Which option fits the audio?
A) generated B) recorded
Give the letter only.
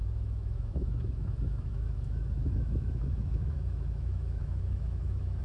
A